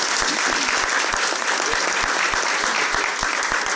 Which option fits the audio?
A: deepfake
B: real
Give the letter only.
B